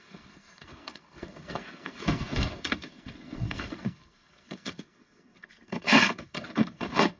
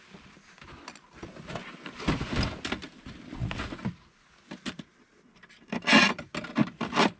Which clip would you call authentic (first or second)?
second